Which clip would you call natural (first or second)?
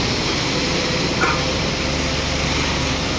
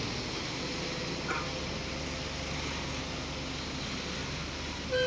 second